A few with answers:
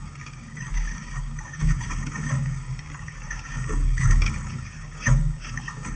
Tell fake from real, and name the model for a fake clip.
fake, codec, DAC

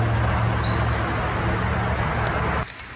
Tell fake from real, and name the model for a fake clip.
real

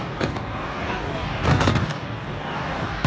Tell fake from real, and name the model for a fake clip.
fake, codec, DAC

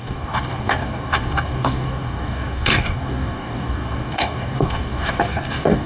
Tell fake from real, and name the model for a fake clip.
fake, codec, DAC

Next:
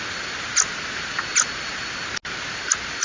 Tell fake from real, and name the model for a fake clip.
real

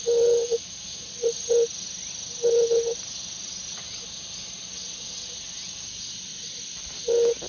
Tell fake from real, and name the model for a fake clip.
real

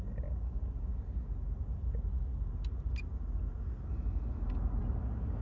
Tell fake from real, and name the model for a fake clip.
real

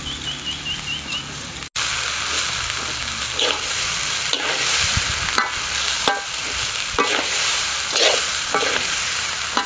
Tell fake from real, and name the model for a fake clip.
real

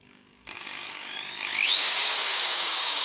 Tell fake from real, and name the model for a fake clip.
fake, codec, DAC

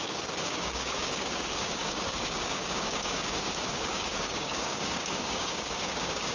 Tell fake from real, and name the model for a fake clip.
fake, codec, DAC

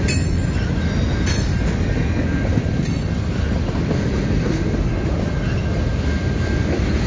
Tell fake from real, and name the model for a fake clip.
real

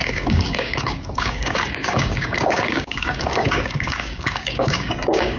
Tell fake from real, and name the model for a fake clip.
fake, codec, DAC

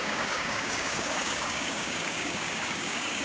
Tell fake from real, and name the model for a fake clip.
fake, codec, DAC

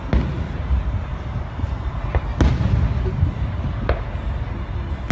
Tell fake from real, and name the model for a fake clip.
real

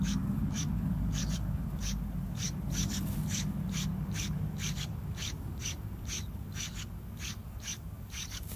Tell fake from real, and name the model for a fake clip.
fake, codec, DAC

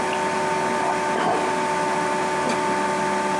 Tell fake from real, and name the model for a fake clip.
real